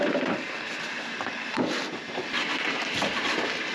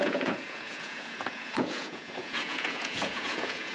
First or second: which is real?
first